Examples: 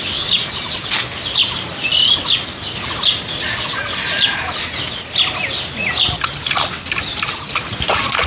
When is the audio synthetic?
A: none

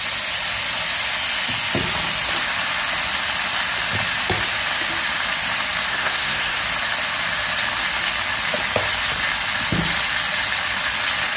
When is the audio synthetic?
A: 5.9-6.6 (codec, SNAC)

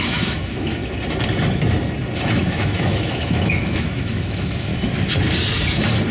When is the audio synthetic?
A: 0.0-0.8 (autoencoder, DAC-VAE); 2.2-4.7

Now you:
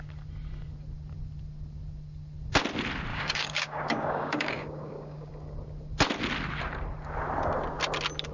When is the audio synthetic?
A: 3.1-5.3 (codec, DAC)

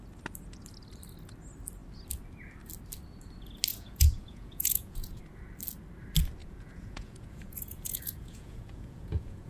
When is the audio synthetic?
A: 3.7-5.2 (vocoder, Vocos); 6.4-9.5